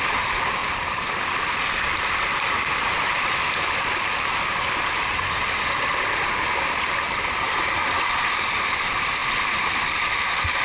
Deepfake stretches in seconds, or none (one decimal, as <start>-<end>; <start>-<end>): 0.6-3.9

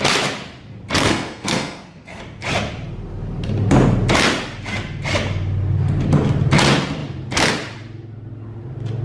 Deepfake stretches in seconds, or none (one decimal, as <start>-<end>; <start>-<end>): 1.0-2.2